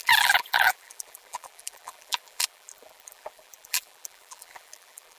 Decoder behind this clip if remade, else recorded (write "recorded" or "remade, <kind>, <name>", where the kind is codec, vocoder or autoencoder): remade, vocoder, BigVGAN v2